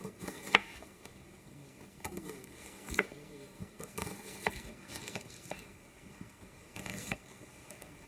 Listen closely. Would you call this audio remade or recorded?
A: remade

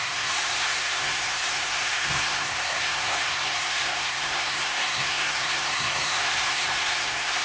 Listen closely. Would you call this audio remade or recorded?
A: remade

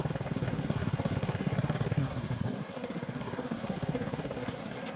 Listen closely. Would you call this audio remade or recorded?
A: remade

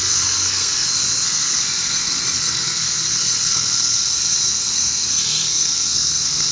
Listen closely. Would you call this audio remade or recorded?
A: remade